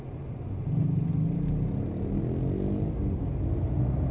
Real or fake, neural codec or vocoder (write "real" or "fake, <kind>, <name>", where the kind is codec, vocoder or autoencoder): real